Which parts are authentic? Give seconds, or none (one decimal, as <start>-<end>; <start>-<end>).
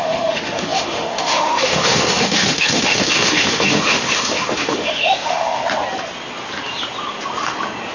5.6-7.9